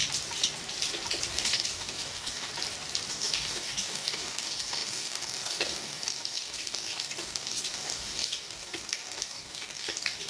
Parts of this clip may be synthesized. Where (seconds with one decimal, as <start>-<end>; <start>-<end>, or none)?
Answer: 1.3-2.5; 3.1-10.3